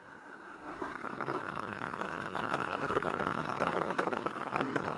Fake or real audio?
fake